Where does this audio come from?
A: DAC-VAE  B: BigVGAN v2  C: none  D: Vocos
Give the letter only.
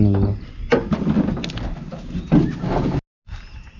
C